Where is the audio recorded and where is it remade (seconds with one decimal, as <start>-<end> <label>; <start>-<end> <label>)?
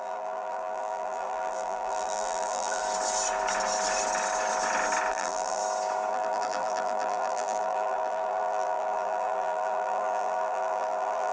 0.0-2.8 remade; 2.8-5.1 recorded; 5.1-5.6 remade; 5.6-6.1 recorded; 6.1-11.3 remade